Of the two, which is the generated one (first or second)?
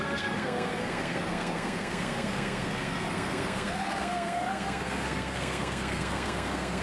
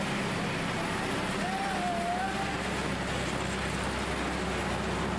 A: first